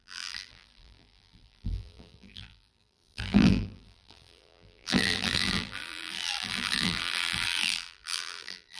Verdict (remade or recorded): remade